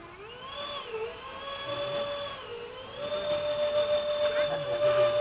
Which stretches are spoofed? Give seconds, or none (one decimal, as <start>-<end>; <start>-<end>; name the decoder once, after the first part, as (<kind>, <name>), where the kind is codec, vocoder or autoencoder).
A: none